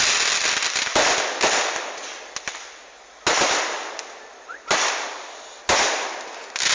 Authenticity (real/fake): real